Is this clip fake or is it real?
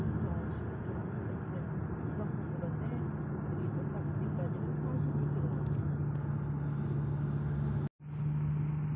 real